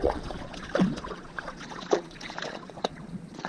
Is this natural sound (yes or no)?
no